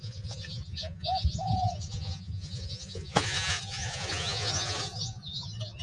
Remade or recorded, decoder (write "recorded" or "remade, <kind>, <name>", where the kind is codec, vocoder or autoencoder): remade, vocoder, Vocos